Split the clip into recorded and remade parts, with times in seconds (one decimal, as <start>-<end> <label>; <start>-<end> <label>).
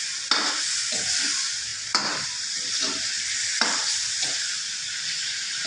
0.0-1.7 recorded; 1.7-4.3 remade; 4.3-5.7 recorded